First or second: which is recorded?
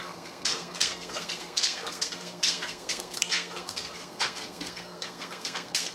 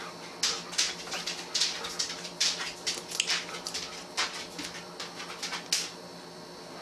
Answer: second